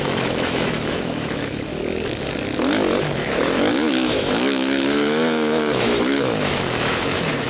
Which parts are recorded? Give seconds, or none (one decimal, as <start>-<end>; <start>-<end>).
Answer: 1.7-3.0